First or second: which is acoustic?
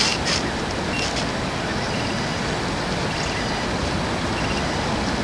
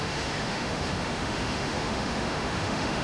first